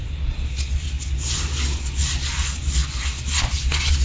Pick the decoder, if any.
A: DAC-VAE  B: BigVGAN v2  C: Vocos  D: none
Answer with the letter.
C